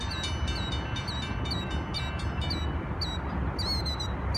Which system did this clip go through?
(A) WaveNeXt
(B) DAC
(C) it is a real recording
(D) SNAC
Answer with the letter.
C